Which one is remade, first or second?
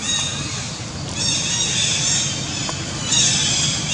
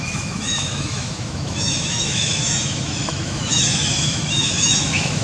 second